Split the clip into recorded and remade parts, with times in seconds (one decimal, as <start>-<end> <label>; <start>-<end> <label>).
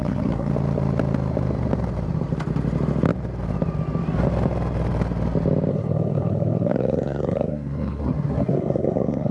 0.0-0.5 remade; 0.5-5.7 recorded; 5.7-9.3 remade